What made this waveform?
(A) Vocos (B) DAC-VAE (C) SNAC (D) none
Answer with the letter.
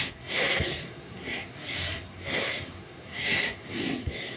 C